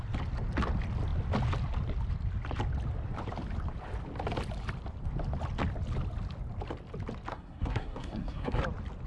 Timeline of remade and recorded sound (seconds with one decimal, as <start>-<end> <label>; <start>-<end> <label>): 0.0-7.3 recorded; 7.3-8.6 remade; 8.6-9.1 recorded